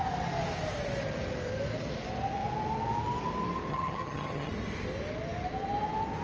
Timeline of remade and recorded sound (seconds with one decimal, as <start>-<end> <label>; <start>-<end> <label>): 0.0-3.7 recorded; 3.7-4.5 remade; 4.5-6.2 recorded